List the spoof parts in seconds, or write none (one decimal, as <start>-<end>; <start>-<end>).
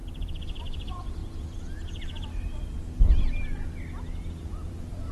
0.6-1.2; 4.3-5.1